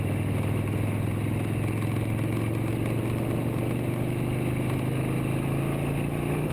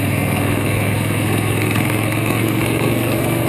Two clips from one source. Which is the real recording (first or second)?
first